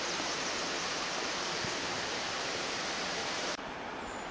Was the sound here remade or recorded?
remade